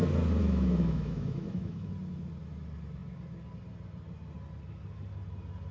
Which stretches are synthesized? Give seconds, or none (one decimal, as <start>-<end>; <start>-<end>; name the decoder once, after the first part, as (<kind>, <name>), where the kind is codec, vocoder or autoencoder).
0.4-1.9 (autoencoder, DAC-VAE)